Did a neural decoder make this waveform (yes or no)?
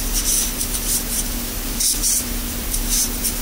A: yes